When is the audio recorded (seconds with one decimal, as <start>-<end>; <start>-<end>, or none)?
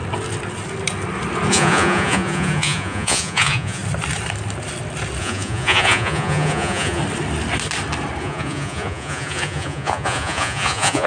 0.0-1.5; 3.8-5.2; 7.0-8.2